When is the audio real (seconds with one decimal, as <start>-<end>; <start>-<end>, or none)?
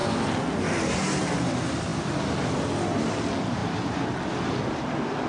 0.0-5.3